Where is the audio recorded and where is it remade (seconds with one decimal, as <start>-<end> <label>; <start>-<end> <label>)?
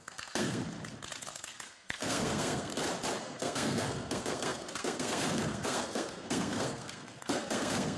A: 0.0-0.6 remade; 0.6-1.3 recorded; 1.3-2.7 remade; 2.7-3.2 recorded; 3.2-8.0 remade